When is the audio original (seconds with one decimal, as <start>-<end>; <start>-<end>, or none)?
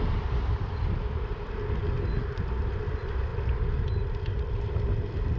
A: 0.0-5.4